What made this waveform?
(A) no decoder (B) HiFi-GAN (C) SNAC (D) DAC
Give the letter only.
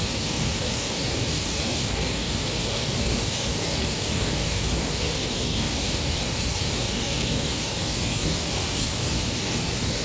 D